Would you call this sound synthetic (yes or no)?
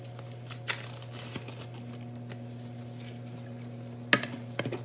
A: no